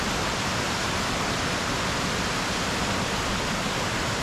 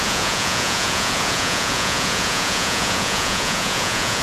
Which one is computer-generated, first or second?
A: second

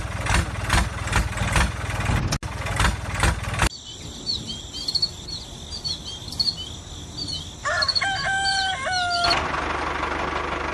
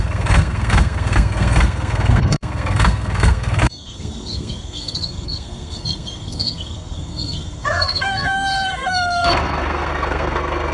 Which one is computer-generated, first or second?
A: second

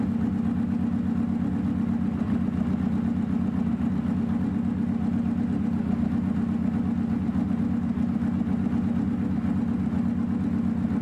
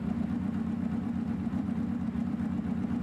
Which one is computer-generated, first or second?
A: second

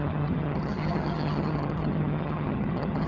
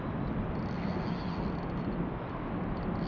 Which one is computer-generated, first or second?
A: first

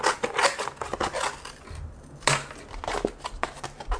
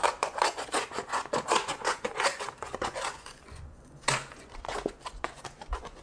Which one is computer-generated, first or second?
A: second